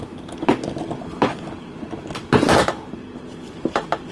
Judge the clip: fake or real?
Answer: real